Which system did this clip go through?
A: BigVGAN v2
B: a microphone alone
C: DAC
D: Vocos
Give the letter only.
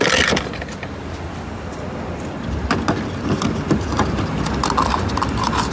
B